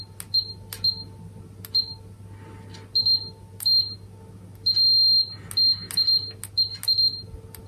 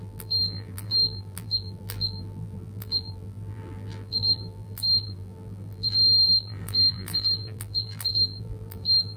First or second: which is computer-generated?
second